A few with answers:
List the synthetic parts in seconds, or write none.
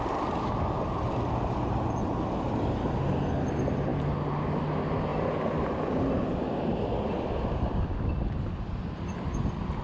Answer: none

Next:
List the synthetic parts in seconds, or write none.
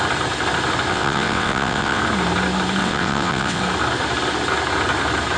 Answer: 0.9-2.0 (vocoder, WaveNeXt); 2.8-3.6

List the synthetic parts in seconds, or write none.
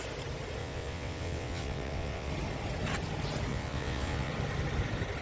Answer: 0.6-2.3 (vocoder, WaveNeXt); 3.5-4.3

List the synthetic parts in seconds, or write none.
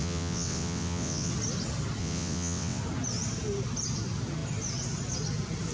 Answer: 0.0-1.3 (vocoder, WaveNeXt); 2.0-2.8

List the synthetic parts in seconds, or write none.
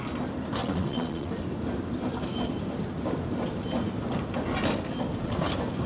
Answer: 0.6-1.3 (vocoder, WaveNeXt)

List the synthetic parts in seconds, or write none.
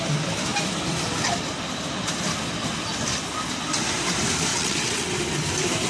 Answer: 4.5-5.1 (vocoder, WaveNeXt)